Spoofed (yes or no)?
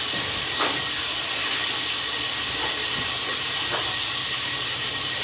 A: no